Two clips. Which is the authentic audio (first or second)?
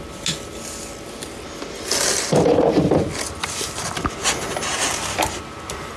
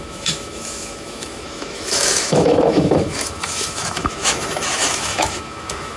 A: first